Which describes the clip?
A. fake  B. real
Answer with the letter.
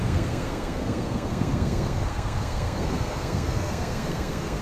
A